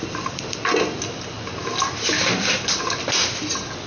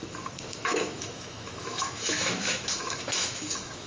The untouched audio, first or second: first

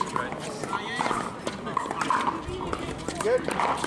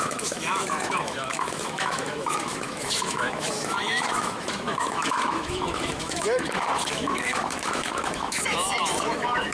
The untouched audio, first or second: first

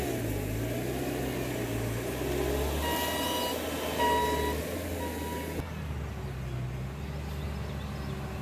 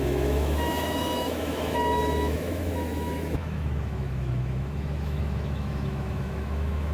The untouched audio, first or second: first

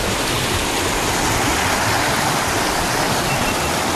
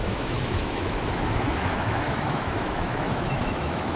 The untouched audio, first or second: first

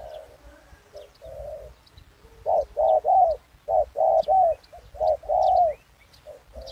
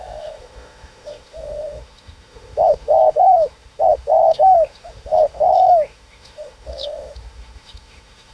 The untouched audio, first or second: first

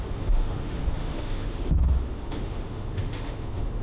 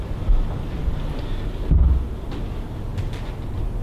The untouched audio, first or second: second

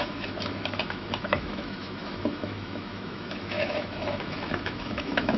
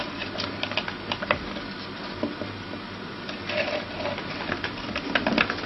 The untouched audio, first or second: second